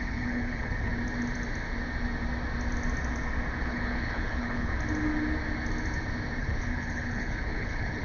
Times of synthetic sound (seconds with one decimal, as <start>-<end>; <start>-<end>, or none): 0.0-0.9; 3.6-4.7; 6.4-8.0